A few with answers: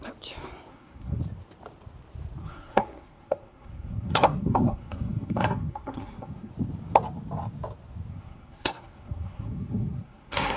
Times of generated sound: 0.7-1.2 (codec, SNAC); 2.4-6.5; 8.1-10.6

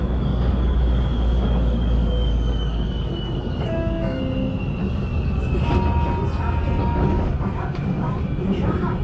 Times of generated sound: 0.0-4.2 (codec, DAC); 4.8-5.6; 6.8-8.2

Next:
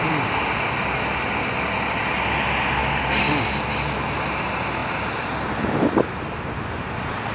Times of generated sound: 2.8-3.7 (vocoder, BigVGAN v2); 4.8-5.8